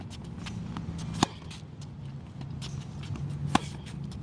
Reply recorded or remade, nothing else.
recorded